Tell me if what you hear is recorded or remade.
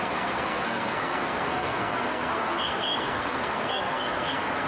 remade